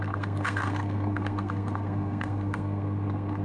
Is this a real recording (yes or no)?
no